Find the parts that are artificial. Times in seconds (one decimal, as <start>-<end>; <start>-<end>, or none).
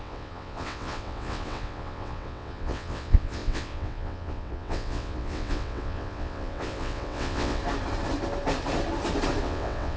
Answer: 0.0-7.6; 9.4-10.0